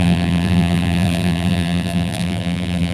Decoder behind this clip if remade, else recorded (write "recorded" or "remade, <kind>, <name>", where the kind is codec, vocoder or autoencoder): remade, vocoder, BigVGAN v2